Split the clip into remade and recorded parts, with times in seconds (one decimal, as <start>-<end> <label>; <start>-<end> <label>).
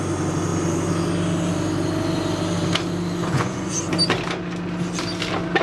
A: 0.0-3.2 recorded; 3.2-3.8 remade; 3.8-5.6 recorded